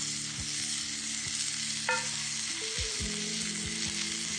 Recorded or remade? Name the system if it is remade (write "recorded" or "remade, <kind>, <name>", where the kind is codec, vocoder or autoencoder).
recorded